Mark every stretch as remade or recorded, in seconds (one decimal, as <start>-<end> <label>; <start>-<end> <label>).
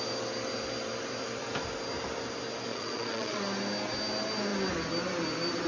0.0-2.7 recorded; 2.7-3.4 remade; 3.4-5.7 recorded